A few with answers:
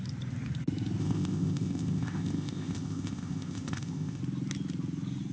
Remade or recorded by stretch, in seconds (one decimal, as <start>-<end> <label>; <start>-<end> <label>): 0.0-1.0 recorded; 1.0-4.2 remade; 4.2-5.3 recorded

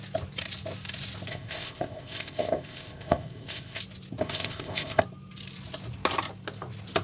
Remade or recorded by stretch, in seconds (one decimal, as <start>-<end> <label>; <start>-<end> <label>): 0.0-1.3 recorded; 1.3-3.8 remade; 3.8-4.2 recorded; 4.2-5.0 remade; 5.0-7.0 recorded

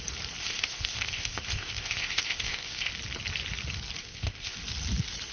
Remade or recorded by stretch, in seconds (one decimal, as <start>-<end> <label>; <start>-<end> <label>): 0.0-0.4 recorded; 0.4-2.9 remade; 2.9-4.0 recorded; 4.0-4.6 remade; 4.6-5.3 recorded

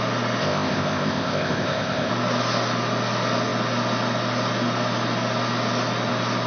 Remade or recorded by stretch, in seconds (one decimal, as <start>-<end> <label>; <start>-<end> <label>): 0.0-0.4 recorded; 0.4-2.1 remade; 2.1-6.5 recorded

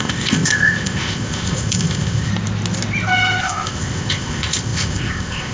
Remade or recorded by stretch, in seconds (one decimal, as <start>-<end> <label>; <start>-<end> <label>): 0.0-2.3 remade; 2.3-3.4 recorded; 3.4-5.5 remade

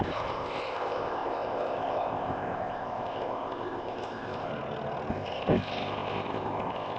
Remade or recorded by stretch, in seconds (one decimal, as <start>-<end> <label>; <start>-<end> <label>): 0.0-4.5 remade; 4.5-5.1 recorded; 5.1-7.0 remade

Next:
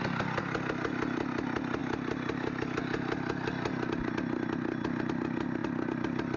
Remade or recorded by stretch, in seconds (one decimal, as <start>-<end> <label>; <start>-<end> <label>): 0.0-6.4 recorded